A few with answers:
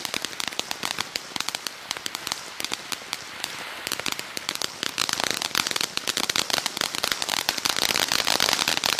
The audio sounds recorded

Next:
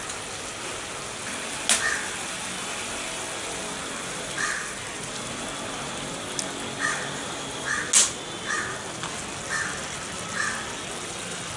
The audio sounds recorded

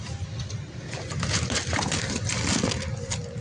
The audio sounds recorded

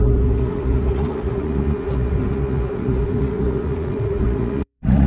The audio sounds remade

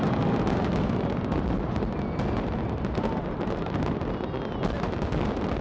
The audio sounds recorded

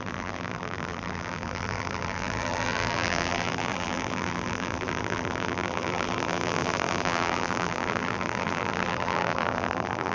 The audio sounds remade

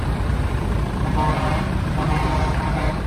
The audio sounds remade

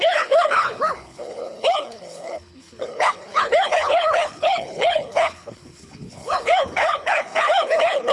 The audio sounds remade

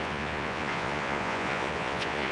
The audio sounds remade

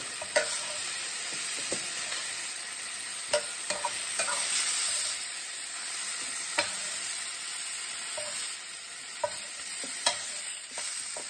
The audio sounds recorded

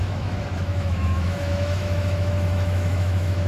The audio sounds remade